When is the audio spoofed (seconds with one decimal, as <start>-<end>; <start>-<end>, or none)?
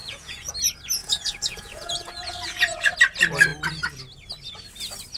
0.0-0.5; 1.0-2.9